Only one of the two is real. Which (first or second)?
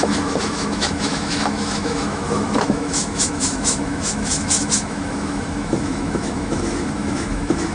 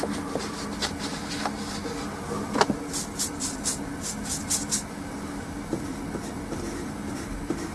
second